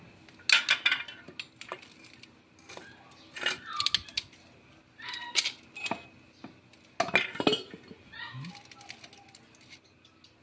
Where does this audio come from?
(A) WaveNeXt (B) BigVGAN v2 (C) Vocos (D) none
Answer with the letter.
D